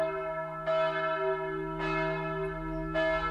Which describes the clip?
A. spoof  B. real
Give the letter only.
B